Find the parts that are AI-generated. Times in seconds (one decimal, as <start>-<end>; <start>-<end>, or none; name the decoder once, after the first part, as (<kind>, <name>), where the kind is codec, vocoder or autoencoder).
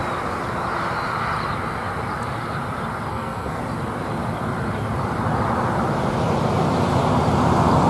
3.1-3.6 (codec, SNAC)